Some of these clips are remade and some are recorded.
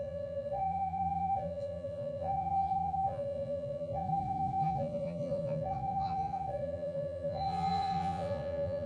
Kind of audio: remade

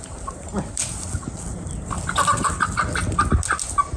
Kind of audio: recorded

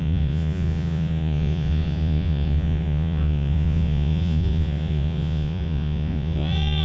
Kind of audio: remade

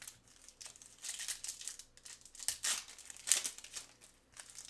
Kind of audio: recorded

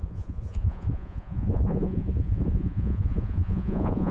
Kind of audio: remade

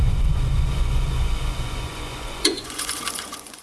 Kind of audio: remade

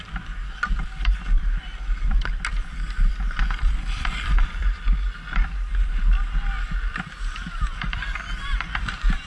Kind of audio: recorded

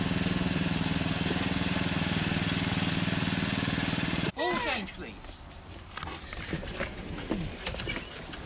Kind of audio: recorded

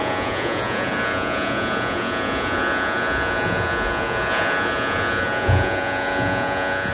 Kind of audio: remade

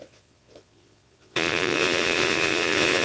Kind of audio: remade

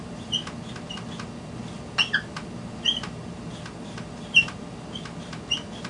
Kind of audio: recorded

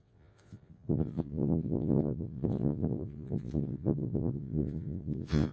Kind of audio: remade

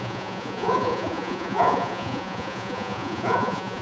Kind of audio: remade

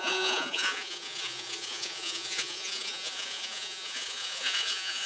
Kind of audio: remade